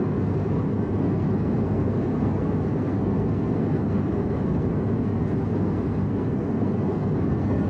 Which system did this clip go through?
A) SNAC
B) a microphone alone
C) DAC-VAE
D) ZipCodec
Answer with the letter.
A